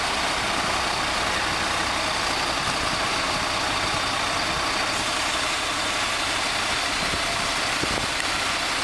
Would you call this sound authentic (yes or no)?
yes